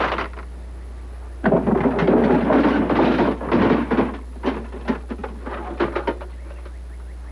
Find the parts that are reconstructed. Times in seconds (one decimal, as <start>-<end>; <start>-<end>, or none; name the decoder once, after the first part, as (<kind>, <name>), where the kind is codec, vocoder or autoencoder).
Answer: none